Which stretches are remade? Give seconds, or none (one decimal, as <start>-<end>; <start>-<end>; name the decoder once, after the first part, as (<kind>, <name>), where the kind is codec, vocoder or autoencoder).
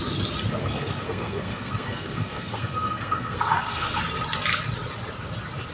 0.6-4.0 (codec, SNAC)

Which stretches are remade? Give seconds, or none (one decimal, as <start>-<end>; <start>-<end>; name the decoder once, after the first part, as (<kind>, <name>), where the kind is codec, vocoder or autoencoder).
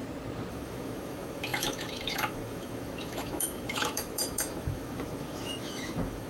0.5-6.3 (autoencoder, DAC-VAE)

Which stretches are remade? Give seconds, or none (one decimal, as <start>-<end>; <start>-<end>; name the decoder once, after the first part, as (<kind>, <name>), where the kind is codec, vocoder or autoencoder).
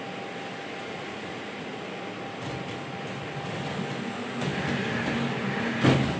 0.8-2.0 (vocoder, Vocos)